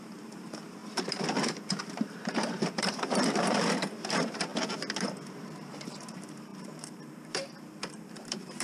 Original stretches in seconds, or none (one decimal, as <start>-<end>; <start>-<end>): 4.5-5.5